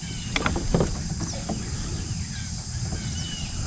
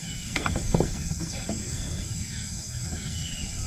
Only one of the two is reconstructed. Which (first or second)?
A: second